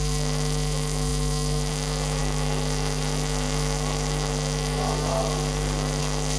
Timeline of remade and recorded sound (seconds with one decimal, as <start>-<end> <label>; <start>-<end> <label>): 0.0-6.4 remade